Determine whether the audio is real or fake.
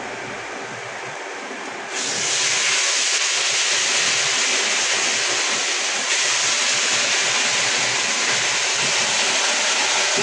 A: real